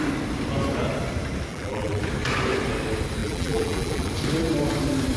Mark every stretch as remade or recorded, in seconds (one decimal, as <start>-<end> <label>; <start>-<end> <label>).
0.0-1.5 recorded; 1.5-2.0 remade; 2.0-3.2 recorded; 3.2-4.1 remade; 4.1-5.2 recorded